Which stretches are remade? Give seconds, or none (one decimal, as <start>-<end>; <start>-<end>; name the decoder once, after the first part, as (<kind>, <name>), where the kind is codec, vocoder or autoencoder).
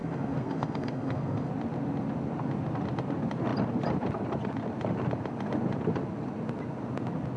0.0-1.5 (codec, SNAC)